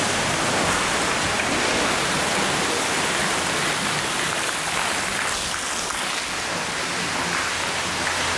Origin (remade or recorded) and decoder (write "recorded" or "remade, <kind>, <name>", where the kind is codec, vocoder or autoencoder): recorded